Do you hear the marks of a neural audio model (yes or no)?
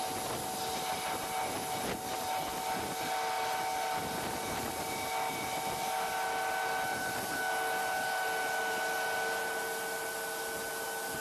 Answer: no